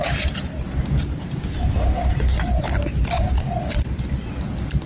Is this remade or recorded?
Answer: recorded